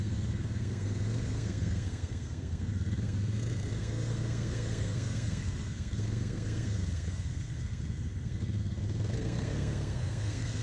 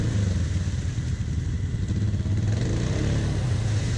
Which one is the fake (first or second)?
first